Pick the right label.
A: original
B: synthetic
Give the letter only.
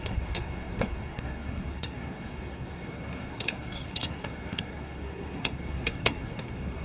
B